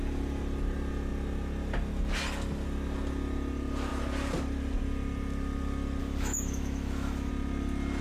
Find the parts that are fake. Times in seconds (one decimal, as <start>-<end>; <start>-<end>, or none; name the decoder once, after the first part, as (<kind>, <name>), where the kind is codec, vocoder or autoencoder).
6.0-7.3 (autoencoder, DAC-VAE)